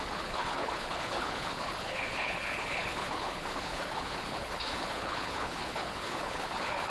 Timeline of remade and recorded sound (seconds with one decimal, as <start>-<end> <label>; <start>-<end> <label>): 0.0-6.9 remade